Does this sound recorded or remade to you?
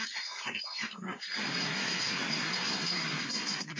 remade